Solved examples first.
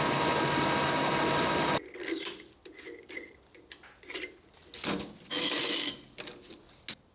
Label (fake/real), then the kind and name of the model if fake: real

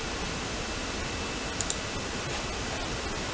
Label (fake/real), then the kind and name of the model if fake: real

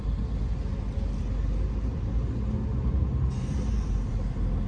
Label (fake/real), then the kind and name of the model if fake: real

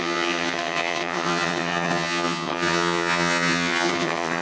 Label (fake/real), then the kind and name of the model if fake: fake, vocoder, HiFi-GAN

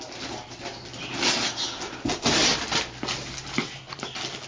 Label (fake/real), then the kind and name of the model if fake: real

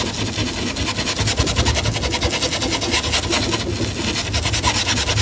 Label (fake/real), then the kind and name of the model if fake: real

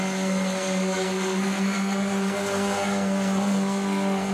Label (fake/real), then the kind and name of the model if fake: fake, codec, SNAC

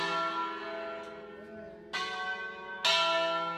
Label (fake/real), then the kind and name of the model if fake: real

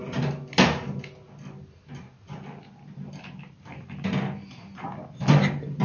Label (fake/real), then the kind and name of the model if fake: real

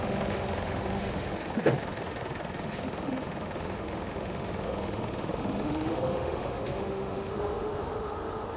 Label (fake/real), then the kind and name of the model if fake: fake, autoencoder, DAC-VAE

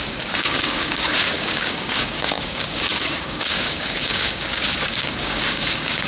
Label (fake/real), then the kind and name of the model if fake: fake, codec, DAC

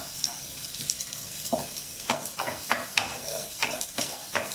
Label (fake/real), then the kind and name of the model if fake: fake, codec, SNAC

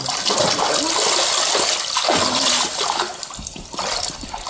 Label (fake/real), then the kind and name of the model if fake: real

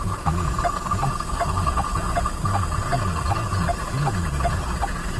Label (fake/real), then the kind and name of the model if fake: fake, vocoder, Vocos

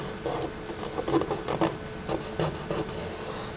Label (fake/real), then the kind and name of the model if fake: real